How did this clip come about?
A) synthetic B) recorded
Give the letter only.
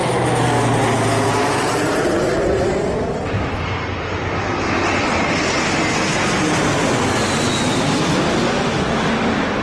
B